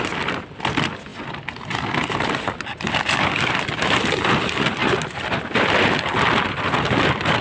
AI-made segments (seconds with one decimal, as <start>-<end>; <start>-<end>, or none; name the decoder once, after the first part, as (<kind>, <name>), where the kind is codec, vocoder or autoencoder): none